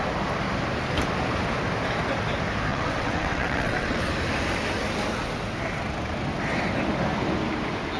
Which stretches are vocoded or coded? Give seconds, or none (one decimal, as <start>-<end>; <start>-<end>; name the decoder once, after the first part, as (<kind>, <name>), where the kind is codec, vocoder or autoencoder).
2.7-4.1 (vocoder, WaveNeXt)

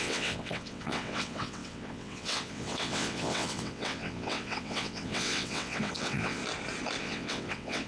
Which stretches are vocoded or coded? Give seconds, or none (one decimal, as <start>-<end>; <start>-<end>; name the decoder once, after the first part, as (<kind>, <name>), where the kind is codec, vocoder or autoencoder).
0.0-6.4 (vocoder, WaveNeXt); 7.0-7.9

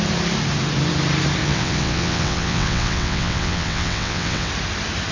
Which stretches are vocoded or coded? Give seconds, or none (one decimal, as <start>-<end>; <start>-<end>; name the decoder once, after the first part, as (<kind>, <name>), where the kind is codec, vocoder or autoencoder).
1.4-4.5 (vocoder, WaveNeXt)

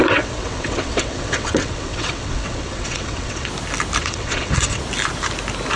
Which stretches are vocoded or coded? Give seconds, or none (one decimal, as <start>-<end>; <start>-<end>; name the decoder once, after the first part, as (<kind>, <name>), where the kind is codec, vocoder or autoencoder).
0.0-3.5 (vocoder, WaveNeXt); 4.0-4.8

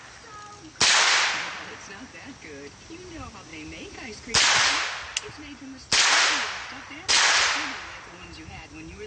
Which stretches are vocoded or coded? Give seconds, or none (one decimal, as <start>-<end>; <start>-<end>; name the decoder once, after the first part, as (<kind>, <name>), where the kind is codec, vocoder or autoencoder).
none

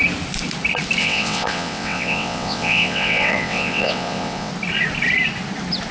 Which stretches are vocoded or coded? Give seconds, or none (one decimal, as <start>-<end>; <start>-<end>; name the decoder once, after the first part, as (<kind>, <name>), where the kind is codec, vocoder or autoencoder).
1.0-4.5 (vocoder, WaveNeXt)